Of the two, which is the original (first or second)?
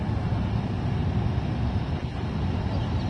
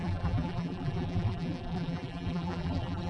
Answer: first